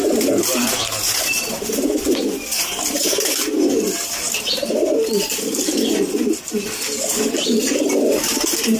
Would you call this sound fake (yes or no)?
no